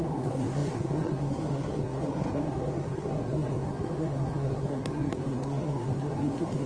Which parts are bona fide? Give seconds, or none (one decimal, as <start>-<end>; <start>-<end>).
none